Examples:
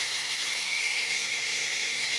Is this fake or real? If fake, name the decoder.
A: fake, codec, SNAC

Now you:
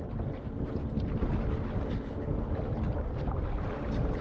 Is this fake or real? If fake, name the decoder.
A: real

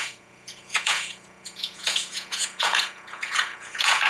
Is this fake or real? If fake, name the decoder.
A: fake, vocoder, Vocos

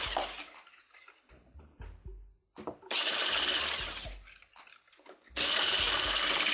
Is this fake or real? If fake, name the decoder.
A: real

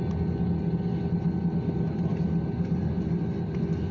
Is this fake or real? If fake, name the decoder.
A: real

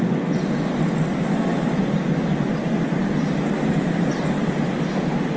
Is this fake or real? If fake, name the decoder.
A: real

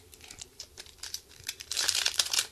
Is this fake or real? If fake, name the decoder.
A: fake, vocoder, BigVGAN v2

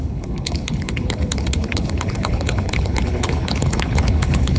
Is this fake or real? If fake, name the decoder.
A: fake, codec, HILCodec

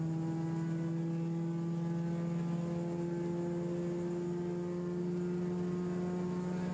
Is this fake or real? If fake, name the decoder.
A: real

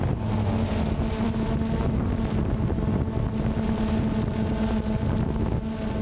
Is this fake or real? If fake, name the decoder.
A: real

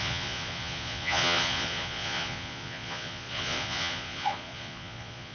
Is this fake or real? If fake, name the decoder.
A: fake, vocoder, Vocos